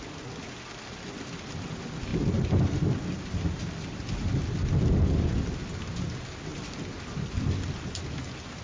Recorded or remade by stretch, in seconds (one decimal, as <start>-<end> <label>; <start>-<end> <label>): 0.0-8.6 recorded